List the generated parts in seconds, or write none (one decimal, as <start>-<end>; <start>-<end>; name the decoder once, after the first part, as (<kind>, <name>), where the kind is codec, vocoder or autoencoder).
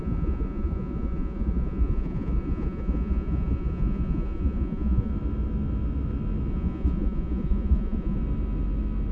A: 0.0-5.1 (vocoder, Vocos); 6.5-8.2